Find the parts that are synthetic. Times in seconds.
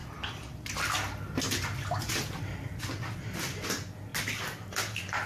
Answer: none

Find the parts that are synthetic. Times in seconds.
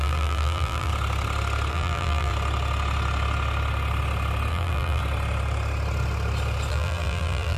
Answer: 0.0-0.9 (vocoder, BigVGAN v2); 1.7-2.3; 4.5-5.0; 6.7-7.6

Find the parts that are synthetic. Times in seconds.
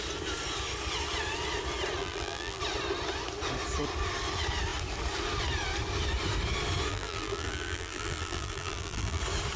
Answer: 2.0-2.6 (vocoder, BigVGAN v2); 6.9-9.2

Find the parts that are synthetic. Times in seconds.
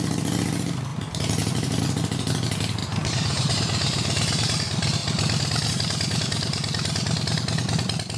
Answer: 0.9-1.8 (vocoder, BigVGAN v2); 2.8-3.5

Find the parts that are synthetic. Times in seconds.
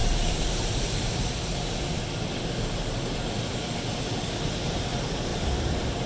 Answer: 0.0-1.9 (vocoder, BigVGAN v2); 5.3-6.1